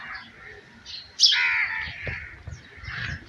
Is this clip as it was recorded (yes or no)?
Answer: yes